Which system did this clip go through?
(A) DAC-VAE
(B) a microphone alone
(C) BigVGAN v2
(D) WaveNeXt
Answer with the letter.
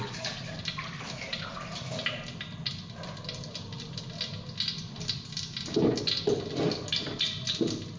B